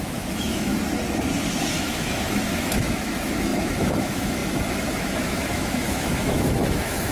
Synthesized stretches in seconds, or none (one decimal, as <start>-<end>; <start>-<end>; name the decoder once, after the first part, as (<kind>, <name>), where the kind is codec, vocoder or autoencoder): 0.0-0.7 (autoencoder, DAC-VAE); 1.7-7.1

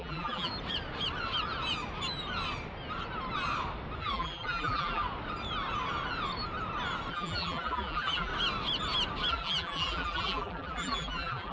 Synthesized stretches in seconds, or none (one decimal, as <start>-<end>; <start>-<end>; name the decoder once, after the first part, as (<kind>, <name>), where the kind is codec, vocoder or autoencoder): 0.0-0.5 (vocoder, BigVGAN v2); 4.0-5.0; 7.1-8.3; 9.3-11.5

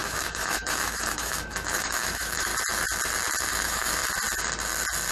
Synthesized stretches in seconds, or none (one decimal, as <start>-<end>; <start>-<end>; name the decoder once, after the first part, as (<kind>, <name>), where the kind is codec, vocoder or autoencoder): 0.0-2.5 (autoencoder, DAC-VAE); 3.5-4.0

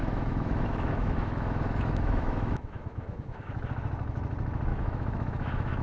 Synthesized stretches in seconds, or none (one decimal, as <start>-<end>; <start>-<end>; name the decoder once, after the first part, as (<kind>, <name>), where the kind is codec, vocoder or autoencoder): 0.0-3.5 (autoencoder, DAC-VAE); 4.7-5.8